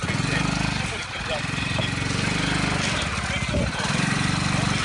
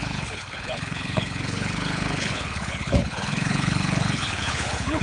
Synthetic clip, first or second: second